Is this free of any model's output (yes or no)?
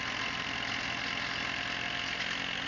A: yes